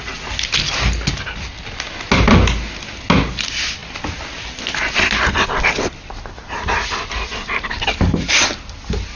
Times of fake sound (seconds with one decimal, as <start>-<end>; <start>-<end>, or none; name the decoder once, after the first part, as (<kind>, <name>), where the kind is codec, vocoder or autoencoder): none